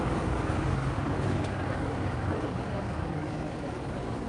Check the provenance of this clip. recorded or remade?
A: remade